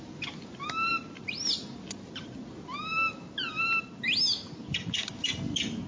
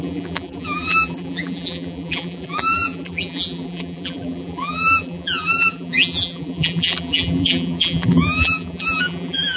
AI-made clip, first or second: second